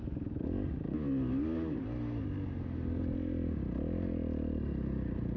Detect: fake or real real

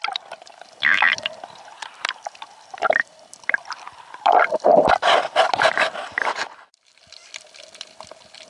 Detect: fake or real fake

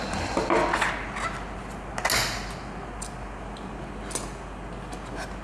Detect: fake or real real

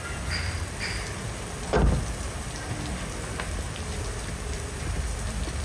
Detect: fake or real fake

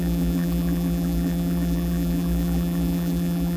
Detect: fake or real fake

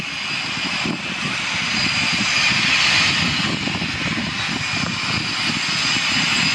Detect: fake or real real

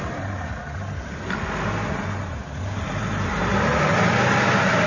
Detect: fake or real real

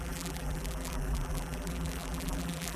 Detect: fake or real fake